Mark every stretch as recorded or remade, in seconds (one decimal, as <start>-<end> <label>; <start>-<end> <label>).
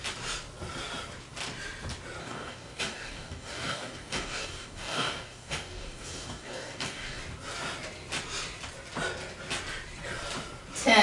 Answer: 0.0-2.2 recorded; 2.2-7.2 remade; 7.2-11.0 recorded